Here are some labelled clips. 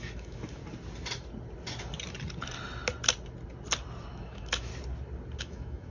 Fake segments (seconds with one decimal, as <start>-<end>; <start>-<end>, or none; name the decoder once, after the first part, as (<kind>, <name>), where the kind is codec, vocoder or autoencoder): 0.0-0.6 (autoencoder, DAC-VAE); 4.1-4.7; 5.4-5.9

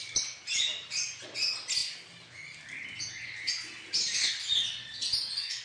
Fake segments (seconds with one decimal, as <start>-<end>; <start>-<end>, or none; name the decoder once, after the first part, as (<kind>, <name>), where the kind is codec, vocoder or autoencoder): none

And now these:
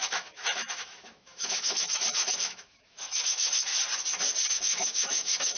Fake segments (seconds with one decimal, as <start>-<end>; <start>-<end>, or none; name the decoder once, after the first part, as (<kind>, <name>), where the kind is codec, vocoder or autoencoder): 0.0-3.7 (autoencoder, DAC-VAE); 4.5-5.6

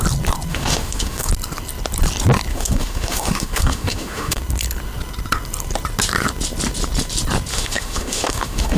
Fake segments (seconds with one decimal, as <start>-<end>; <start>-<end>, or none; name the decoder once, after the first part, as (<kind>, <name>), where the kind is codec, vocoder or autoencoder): 0.5-1.3 (autoencoder, DAC-VAE); 2.5-4.4; 7.5-8.8